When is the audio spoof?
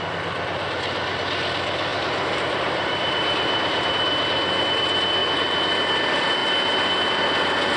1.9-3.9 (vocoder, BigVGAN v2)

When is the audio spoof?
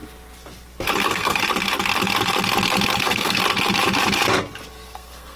1.0-1.4 (codec, SNAC); 3.0-3.4; 4.7-5.4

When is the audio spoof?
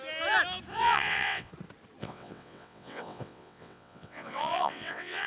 0.7-1.5 (vocoder, WaveNeXt); 2.0-5.3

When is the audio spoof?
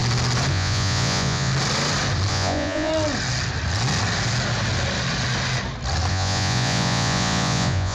0.5-1.5 (vocoder, Vocos); 2.3-2.9; 6.1-7.9